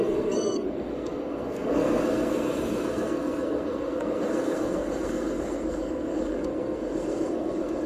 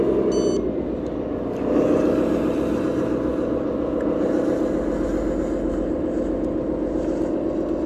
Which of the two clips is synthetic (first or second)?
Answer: first